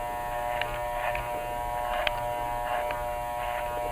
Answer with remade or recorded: recorded